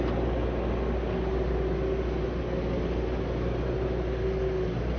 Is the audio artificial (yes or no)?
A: no